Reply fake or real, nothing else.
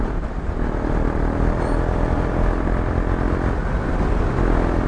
real